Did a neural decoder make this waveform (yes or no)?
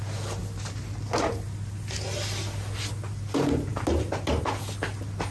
no